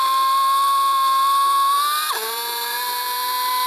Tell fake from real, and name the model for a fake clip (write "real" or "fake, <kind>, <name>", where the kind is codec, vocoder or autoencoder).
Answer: fake, vocoder, BigVGAN v2